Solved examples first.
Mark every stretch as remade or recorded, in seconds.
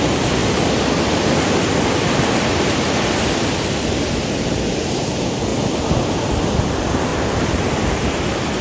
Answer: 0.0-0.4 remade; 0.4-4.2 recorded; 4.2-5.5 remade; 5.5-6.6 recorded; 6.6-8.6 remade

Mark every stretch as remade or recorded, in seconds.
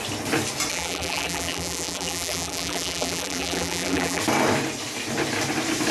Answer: 0.0-0.7 recorded; 0.7-4.2 remade; 4.2-5.9 recorded